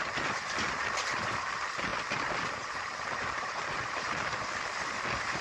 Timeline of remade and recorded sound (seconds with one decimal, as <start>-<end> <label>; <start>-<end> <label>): 0.0-5.4 recorded